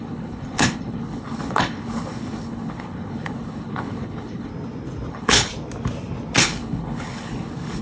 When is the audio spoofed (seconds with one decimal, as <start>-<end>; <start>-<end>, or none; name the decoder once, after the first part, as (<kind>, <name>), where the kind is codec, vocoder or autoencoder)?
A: 0.0-4.5 (codec, HILCodec); 5.1-5.5; 6.4-7.8